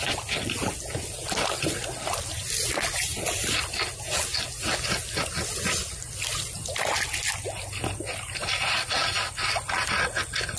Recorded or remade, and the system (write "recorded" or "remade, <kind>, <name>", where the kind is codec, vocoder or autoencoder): recorded